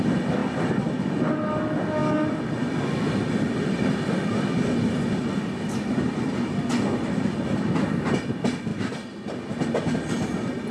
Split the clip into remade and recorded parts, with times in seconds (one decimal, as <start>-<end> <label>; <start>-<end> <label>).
0.0-10.7 recorded